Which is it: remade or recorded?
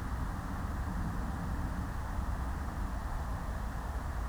recorded